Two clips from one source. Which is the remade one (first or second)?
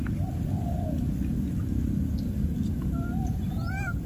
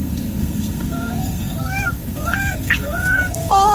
second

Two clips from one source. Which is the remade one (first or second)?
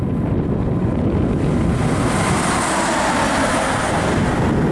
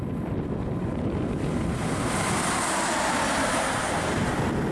second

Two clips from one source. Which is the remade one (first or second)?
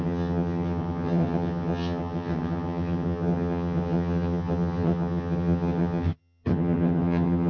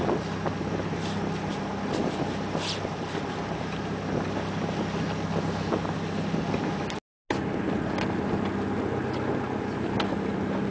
first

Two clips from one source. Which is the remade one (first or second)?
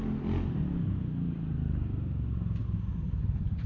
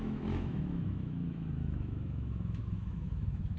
second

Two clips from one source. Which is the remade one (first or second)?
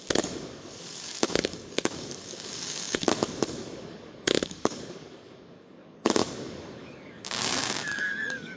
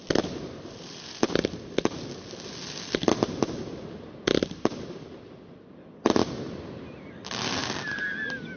first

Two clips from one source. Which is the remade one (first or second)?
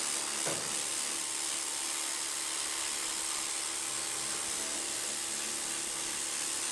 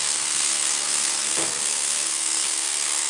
second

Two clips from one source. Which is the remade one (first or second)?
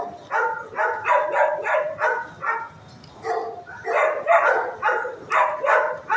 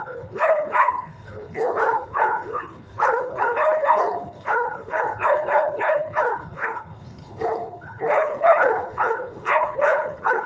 second